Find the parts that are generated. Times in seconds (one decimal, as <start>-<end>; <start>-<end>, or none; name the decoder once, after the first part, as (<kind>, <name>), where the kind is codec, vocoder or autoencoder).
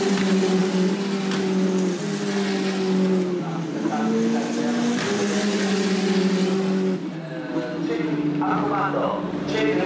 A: none